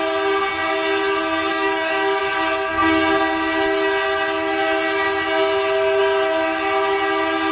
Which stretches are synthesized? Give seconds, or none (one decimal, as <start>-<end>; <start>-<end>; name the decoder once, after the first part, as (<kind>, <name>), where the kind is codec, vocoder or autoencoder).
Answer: 1.5-2.2 (codec, DAC)